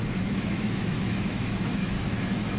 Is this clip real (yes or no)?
no